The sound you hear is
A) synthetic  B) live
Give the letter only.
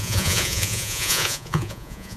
A